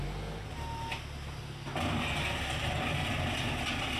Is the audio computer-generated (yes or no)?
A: no